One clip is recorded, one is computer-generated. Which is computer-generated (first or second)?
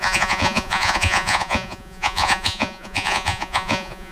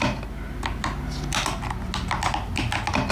first